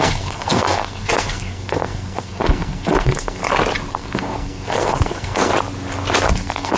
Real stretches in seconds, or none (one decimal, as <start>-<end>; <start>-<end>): 3.4-3.9; 5.5-6.3